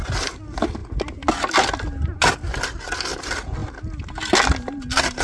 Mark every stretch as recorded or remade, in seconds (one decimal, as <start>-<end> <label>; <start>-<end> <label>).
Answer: 0.0-5.2 recorded